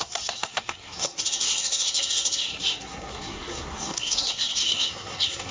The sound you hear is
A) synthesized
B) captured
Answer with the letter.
A